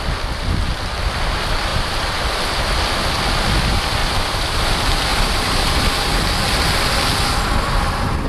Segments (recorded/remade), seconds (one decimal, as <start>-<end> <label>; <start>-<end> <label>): 0.0-1.7 recorded; 1.7-2.4 remade; 2.4-4.0 recorded; 4.0-4.6 remade; 4.6-5.1 recorded; 5.1-5.8 remade; 5.8-8.3 recorded